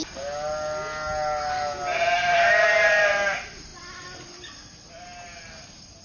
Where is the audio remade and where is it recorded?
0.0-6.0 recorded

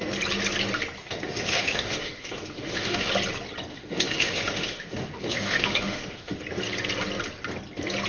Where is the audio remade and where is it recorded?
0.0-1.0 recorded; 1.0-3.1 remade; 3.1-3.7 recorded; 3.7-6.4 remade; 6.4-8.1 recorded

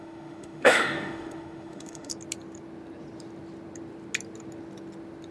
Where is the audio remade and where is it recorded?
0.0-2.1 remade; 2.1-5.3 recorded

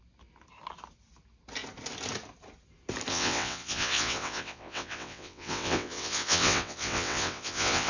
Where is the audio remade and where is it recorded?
0.0-3.1 recorded; 3.1-7.9 remade

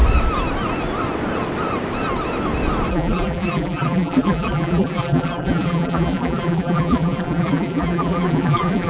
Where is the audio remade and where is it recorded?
0.0-2.9 recorded; 2.9-8.9 remade